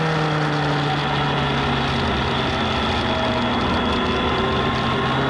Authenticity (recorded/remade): recorded